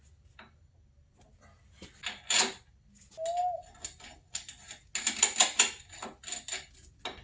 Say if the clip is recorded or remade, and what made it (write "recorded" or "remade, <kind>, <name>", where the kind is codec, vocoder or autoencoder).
recorded